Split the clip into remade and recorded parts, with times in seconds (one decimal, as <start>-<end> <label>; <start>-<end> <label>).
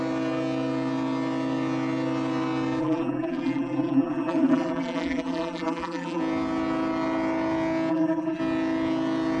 0.0-2.8 recorded; 2.8-6.2 remade; 6.2-7.9 recorded; 7.9-8.4 remade; 8.4-9.4 recorded